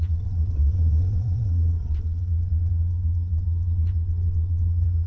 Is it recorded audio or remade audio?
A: remade